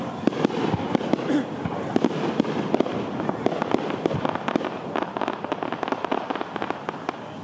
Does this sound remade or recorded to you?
recorded